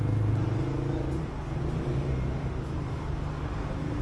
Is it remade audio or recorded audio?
recorded